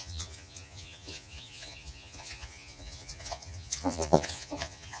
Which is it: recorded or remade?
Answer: remade